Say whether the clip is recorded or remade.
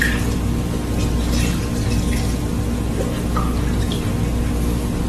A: recorded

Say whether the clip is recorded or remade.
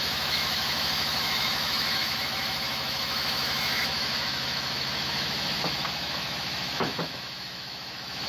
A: remade